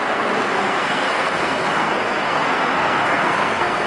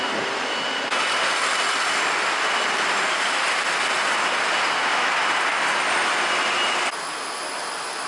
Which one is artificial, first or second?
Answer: first